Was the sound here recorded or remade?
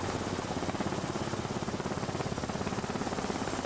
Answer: recorded